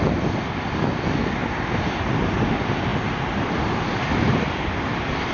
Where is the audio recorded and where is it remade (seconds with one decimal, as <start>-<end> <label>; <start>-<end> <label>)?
0.0-5.3 recorded